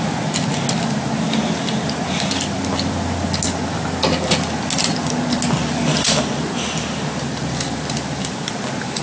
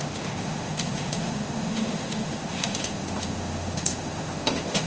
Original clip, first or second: first